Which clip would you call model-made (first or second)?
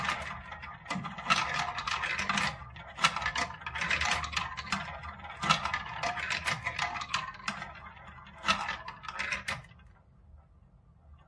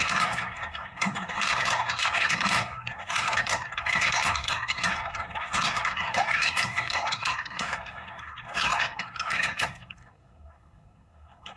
second